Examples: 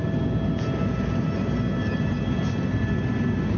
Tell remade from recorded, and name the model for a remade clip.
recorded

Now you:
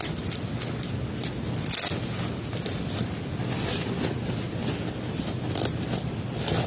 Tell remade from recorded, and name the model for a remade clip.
recorded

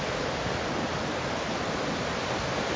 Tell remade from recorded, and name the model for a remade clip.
recorded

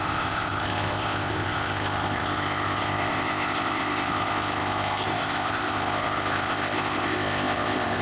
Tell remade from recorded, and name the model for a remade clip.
remade, codec, ZipCodec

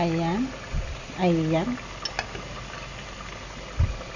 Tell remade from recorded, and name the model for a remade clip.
recorded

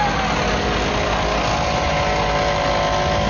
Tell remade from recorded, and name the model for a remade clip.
recorded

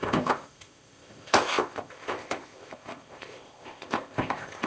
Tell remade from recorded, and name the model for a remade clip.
remade, codec, ZipCodec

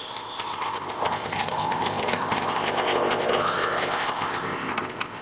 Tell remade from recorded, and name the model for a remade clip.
remade, codec, ZipCodec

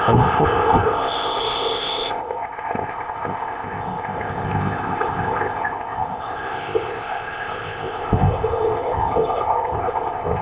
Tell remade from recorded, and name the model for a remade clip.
remade, codec, ZipCodec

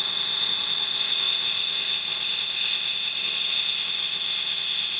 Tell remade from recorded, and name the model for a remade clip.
remade, codec, ZipCodec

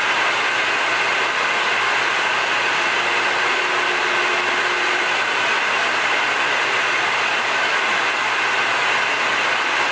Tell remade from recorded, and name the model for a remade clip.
recorded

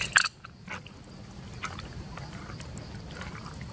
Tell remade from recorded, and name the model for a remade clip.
recorded